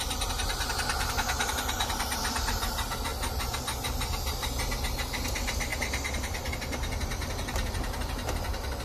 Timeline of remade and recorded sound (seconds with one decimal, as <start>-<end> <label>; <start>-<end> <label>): 0.0-8.8 recorded